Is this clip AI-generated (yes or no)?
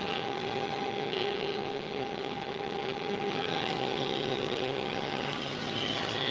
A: yes